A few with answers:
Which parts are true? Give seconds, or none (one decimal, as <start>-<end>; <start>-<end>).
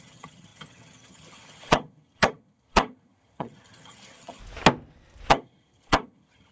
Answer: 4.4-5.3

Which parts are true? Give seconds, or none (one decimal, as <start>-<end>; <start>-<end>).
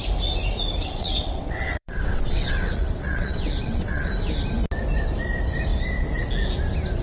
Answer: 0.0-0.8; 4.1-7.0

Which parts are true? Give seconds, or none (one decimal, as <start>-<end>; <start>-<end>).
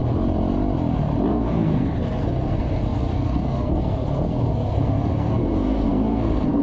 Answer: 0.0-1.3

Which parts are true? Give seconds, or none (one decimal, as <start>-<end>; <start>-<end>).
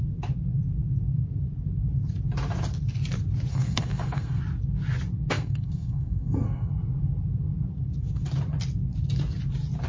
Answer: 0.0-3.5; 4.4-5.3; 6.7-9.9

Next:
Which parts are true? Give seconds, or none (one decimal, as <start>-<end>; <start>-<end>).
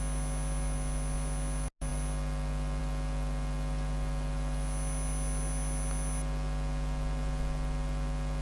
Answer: 0.0-8.4